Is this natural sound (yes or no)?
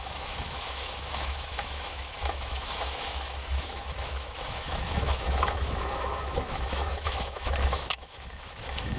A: no